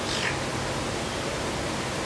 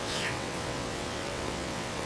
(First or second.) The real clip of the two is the first